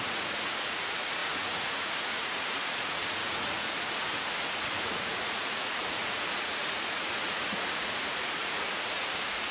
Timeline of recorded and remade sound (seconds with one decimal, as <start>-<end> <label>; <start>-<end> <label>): 0.0-9.5 remade